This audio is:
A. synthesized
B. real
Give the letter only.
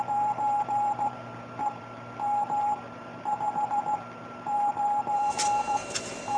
A